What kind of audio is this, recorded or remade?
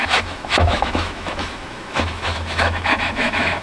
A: remade